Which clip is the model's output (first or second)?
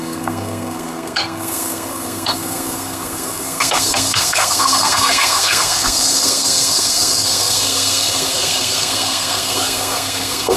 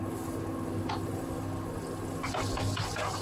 first